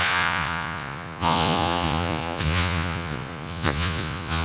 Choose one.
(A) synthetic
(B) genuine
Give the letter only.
A